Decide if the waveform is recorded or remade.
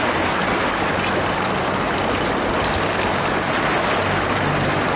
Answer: recorded